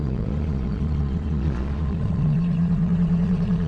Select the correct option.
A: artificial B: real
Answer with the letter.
A